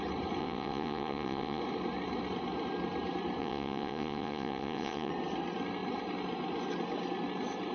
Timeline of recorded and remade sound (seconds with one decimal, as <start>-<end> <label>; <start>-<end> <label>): 0.0-0.4 recorded; 0.4-1.6 remade; 1.6-3.4 recorded; 3.4-5.1 remade; 5.1-7.7 recorded